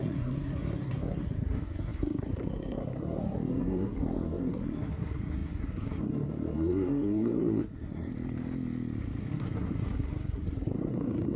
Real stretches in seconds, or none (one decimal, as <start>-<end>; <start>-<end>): 8.1-9.2